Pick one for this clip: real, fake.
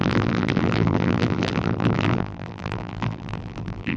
fake